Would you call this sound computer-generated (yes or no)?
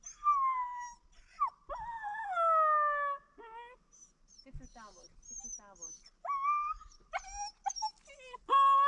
no